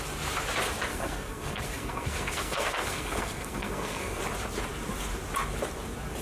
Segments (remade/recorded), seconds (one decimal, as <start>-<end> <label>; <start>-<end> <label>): 0.0-0.9 recorded; 0.9-4.2 remade; 4.2-6.2 recorded